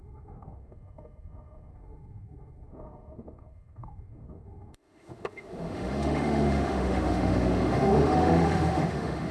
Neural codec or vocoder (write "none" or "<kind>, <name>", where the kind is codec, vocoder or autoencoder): autoencoder, DAC-VAE